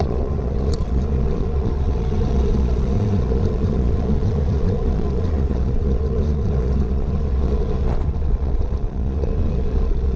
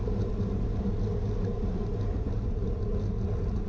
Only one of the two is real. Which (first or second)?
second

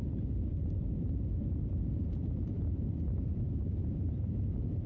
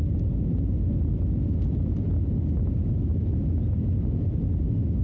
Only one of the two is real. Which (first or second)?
second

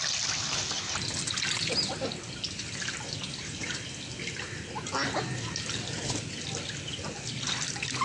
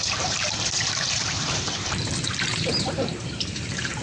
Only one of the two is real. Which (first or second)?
first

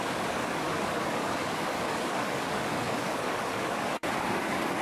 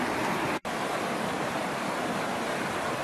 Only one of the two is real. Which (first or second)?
second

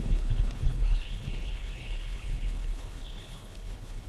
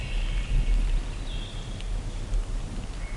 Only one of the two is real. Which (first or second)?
second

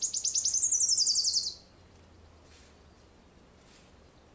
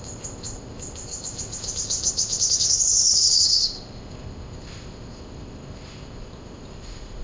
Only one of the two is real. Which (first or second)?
first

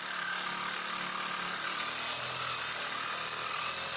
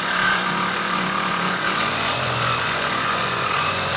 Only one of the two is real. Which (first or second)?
first